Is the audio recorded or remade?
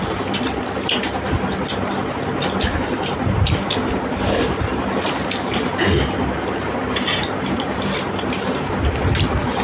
recorded